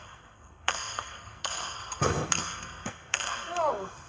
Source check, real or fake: fake